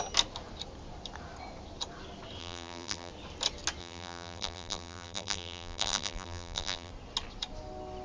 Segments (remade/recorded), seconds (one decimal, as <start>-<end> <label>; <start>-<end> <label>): 0.0-2.4 recorded; 2.4-3.1 remade; 3.1-3.8 recorded; 3.8-6.9 remade; 6.9-8.0 recorded